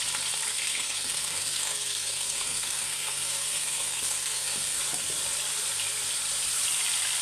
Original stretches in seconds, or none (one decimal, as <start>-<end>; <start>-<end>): 0.0-0.5; 4.8-7.2